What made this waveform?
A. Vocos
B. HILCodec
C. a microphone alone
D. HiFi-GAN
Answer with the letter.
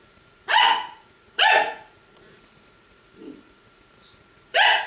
A